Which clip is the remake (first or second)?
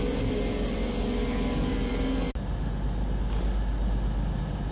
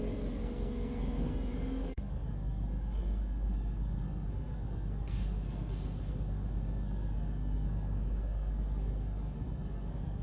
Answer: second